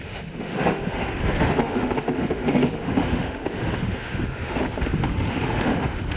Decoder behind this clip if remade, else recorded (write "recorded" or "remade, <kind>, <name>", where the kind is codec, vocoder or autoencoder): remade, autoencoder, DAC-VAE